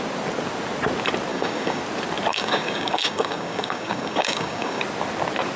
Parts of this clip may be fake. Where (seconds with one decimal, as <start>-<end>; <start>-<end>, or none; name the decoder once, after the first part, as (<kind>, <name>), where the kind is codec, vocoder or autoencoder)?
1.3-1.8 (codec, DAC); 2.3-4.8